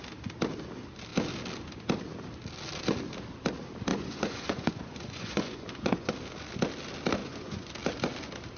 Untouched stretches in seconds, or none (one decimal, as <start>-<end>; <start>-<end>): 0.0-3.9; 6.1-7.2; 7.7-8.6